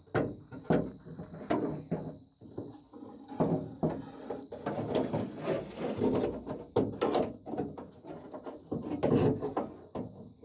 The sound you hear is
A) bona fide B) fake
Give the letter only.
A